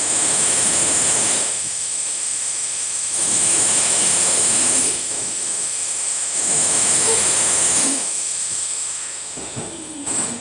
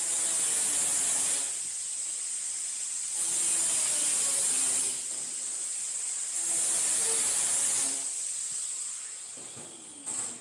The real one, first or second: second